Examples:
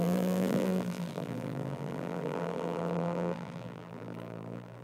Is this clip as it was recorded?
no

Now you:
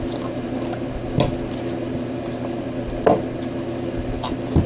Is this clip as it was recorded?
yes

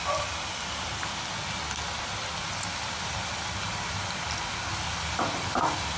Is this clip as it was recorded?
yes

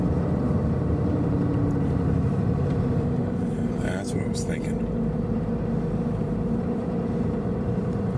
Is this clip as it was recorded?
no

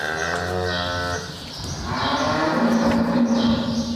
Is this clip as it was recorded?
yes